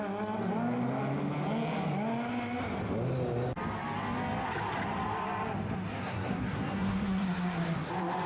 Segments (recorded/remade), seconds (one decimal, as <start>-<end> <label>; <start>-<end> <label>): 0.0-6.0 recorded; 6.0-7.9 remade; 7.9-8.3 recorded